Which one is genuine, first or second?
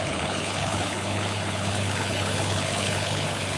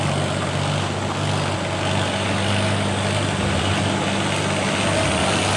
second